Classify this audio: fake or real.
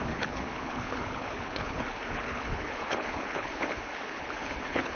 fake